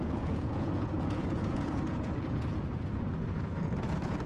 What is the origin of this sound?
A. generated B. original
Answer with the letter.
A